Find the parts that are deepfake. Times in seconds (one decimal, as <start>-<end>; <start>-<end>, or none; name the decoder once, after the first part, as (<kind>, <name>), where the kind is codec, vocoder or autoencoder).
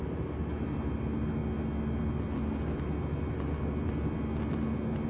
none